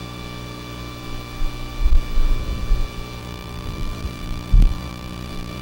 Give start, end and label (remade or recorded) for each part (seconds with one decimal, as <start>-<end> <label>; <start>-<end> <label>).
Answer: 0.0-3.2 recorded; 3.2-5.6 remade

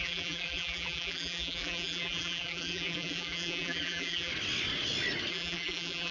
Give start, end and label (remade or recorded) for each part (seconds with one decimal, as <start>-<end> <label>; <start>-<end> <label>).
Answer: 0.0-4.3 remade; 4.3-5.3 recorded; 5.3-6.1 remade

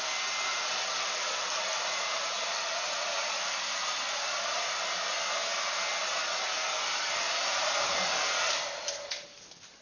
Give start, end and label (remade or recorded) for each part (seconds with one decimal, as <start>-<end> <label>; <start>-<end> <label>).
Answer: 0.0-0.5 recorded; 0.5-4.9 remade; 4.9-9.8 recorded

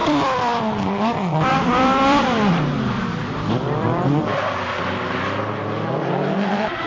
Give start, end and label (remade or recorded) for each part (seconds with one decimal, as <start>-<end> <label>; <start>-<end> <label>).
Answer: 0.0-0.6 remade; 0.6-1.5 recorded; 1.5-4.2 remade; 4.2-6.9 recorded

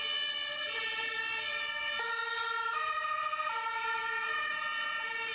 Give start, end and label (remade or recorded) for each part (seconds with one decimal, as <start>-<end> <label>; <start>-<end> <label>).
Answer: 0.0-0.5 recorded; 0.5-1.2 remade; 1.2-5.3 recorded

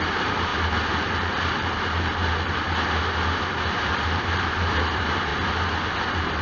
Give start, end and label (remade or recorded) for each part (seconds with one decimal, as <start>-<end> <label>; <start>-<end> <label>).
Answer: 0.0-0.5 remade; 0.5-1.1 recorded; 1.1-2.2 remade; 2.2-3.7 recorded; 3.7-5.3 remade; 5.3-6.0 recorded; 6.0-6.4 remade